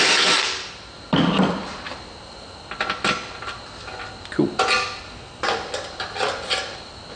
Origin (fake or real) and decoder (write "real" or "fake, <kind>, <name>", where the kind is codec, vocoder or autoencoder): real